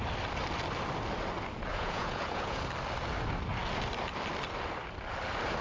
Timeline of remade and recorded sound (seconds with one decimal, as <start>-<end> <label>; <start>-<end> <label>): 0.0-1.7 recorded; 1.7-2.6 remade; 2.6-5.6 recorded